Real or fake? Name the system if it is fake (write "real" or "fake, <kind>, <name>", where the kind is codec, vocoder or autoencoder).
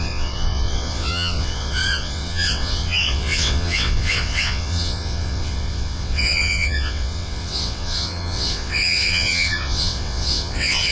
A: fake, vocoder, WaveNeXt